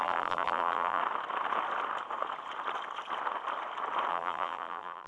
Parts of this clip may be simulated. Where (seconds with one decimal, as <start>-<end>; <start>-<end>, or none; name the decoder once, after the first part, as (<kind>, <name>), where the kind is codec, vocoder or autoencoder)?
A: 0.0-1.0 (vocoder, BigVGAN v2); 4.1-5.1